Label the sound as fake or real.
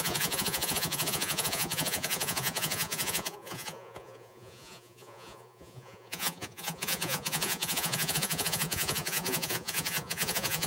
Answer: fake